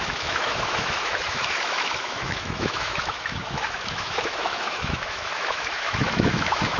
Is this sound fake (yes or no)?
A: yes